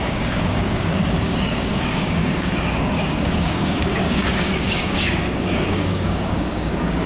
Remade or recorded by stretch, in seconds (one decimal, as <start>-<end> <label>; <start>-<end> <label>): 0.0-7.1 remade